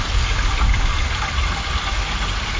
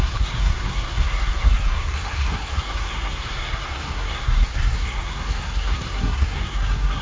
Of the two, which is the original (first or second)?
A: first